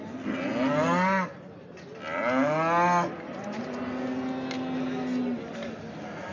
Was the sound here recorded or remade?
recorded